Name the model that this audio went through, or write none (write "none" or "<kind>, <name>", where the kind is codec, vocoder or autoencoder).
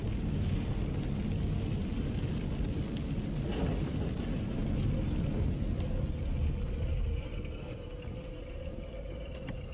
none